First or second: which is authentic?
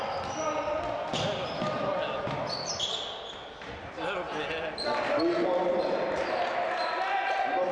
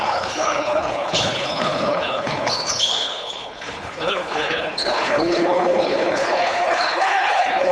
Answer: first